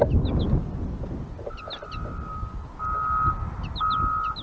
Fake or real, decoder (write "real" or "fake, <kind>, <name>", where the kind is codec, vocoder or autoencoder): real